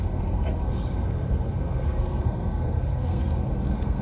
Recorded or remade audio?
remade